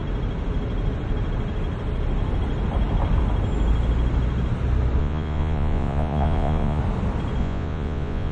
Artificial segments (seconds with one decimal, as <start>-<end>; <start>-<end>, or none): 5.0-6.8; 7.4-8.3